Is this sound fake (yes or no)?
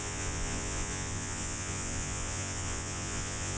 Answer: yes